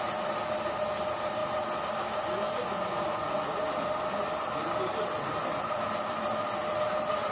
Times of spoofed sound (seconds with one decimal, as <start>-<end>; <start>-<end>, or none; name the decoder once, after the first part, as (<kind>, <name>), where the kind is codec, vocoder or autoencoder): none